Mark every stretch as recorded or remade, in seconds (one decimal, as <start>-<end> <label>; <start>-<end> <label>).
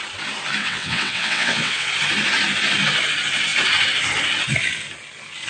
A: 0.0-0.6 recorded; 0.6-1.9 remade; 1.9-5.5 recorded